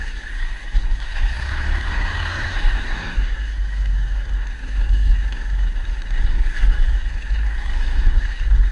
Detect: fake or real fake